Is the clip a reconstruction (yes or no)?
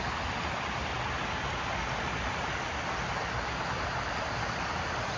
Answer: no